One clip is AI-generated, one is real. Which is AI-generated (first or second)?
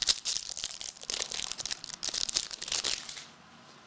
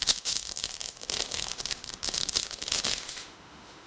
second